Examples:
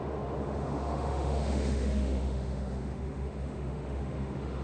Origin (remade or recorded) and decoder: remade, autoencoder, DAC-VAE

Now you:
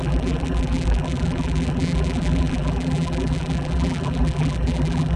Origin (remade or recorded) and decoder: remade, vocoder, BigVGAN v2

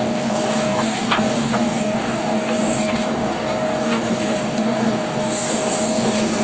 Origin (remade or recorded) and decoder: remade, codec, DAC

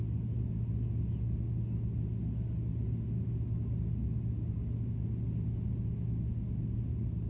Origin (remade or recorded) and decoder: recorded